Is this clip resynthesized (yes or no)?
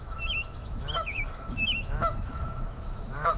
yes